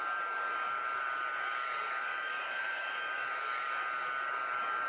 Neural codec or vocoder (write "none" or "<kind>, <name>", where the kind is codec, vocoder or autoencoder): codec, DAC